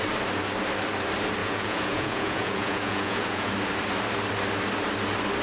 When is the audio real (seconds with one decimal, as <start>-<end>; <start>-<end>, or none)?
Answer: 0.0-1.4; 3.5-5.4